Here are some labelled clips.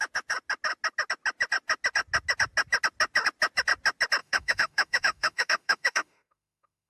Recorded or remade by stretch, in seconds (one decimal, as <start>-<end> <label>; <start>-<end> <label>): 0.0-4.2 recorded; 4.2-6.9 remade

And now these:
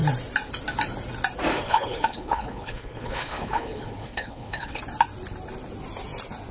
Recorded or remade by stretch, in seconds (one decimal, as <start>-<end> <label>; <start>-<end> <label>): 0.0-1.5 recorded; 1.5-4.8 remade; 4.8-6.5 recorded

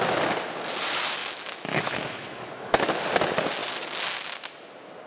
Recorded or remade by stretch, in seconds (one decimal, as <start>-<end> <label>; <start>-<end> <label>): 0.0-1.2 recorded; 1.2-3.0 remade; 3.0-5.1 recorded

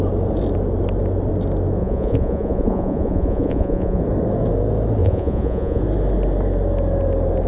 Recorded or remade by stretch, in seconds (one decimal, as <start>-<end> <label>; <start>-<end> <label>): 0.0-1.8 recorded; 1.8-4.0 remade; 4.0-5.0 recorded; 5.0-5.8 remade; 5.8-7.5 recorded

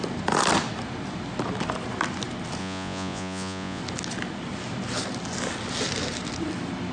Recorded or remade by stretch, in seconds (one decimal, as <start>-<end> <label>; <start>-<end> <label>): 0.0-2.6 recorded; 2.6-3.8 remade; 3.8-6.9 recorded

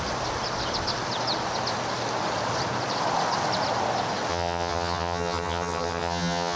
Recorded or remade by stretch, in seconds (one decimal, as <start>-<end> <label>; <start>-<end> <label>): 0.0-4.3 recorded; 4.3-6.6 remade

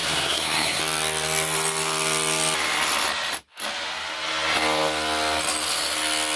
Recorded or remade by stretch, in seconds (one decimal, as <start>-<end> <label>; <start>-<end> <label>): 0.0-0.8 remade; 0.8-6.4 recorded